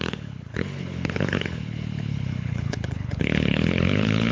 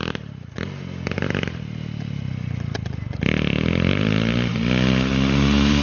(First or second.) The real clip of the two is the second